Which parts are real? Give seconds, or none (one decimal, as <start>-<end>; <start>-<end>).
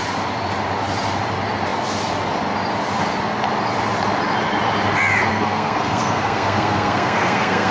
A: 0.0-5.3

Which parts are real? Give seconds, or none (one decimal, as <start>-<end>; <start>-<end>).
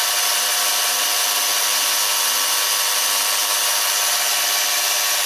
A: 0.0-5.3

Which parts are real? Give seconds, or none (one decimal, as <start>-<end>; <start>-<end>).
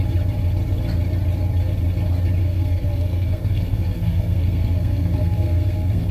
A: 0.0-2.4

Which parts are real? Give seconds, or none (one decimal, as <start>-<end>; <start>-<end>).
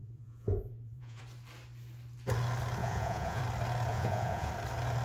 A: 1.2-2.8; 3.4-3.9; 4.5-5.0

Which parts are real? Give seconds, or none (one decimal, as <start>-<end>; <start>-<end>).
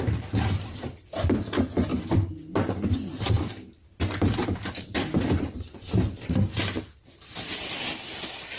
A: 0.0-1.9; 3.3-8.6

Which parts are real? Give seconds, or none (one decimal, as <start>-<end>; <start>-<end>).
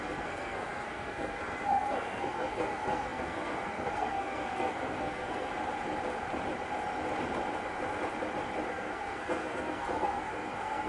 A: 5.5-8.7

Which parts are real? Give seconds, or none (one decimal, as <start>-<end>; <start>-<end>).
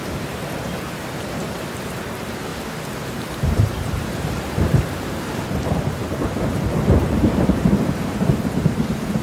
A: 2.5-3.1